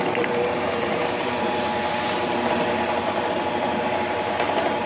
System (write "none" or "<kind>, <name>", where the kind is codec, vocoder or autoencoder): vocoder, BigVGAN v2